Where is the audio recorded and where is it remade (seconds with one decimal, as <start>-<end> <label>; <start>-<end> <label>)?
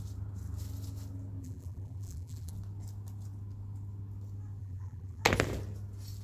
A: 0.0-1.4 recorded; 1.4-2.5 remade; 2.5-4.6 recorded; 4.6-5.2 remade; 5.2-6.2 recorded